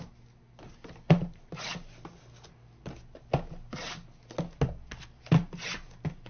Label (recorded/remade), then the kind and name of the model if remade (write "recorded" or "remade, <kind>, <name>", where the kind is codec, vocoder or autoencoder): recorded